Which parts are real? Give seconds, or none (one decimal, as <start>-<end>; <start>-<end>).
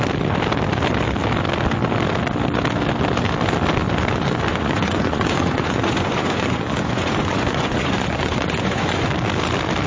0.0-4.5; 9.1-9.9